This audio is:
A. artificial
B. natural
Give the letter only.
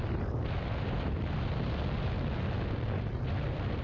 B